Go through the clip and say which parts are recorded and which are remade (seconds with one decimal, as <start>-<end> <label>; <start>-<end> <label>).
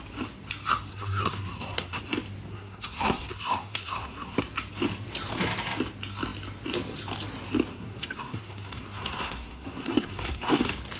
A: 0.0-0.9 recorded; 0.9-2.0 remade; 2.0-2.5 recorded; 2.5-4.4 remade; 4.4-7.7 recorded; 7.7-10.6 remade; 10.6-11.0 recorded